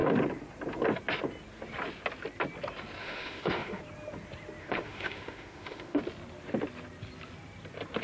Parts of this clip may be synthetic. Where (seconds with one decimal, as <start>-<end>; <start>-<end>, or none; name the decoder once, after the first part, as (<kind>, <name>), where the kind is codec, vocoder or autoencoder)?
3.0-3.8 (autoencoder, DAC-VAE); 4.6-6.0